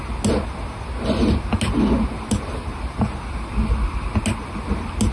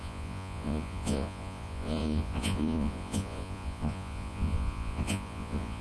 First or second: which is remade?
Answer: second